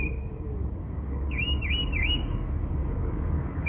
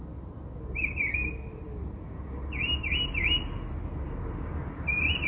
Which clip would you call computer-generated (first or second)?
first